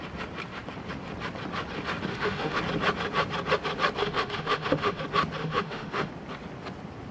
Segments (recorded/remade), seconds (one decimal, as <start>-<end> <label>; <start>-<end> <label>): 0.0-2.1 recorded; 2.1-2.6 remade; 2.6-4.0 recorded; 4.0-5.0 remade; 5.0-5.4 recorded; 5.4-6.1 remade; 6.1-7.1 recorded